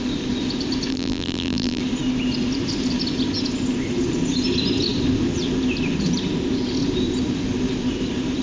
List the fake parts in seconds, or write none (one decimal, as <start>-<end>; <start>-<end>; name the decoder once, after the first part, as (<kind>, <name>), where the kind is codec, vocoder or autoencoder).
0.9-1.8 (vocoder, BigVGAN v2)